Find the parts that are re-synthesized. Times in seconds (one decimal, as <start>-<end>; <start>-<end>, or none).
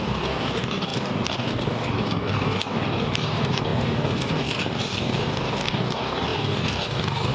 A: 0.0-7.3